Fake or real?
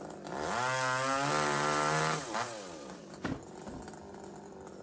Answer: real